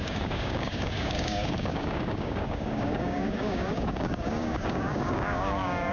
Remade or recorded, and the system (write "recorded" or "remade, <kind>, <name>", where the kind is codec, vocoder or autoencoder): remade, codec, DAC